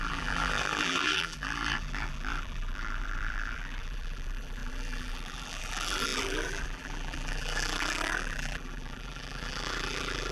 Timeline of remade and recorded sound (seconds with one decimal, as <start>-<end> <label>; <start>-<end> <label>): 0.0-10.3 remade